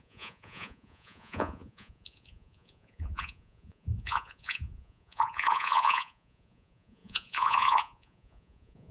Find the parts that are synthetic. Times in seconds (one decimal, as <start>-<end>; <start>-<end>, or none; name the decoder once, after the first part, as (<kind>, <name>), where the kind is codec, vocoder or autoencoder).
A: 0.0-8.9 (vocoder, Vocos)